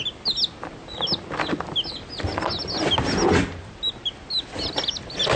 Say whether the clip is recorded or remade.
recorded